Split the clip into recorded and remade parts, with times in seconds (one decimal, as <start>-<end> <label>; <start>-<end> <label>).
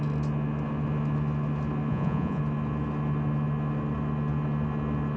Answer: 0.0-1.9 recorded; 1.9-2.4 remade; 2.4-5.2 recorded